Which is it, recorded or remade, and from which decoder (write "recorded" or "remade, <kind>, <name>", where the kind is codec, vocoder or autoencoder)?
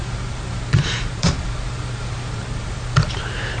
remade, vocoder, BigVGAN v2